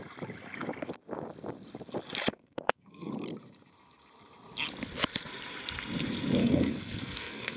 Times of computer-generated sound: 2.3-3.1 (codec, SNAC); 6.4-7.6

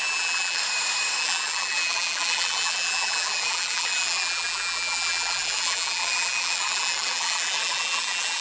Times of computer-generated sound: 0.0-0.6 (vocoder, BigVGAN v2); 1.2-8.4